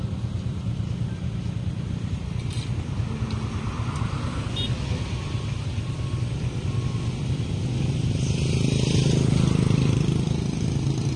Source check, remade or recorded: recorded